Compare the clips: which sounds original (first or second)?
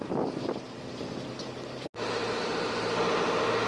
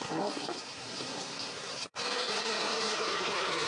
first